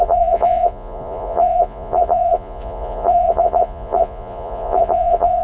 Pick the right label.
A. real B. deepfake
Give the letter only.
B